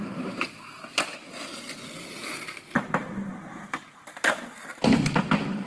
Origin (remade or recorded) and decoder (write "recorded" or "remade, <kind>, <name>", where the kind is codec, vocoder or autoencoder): recorded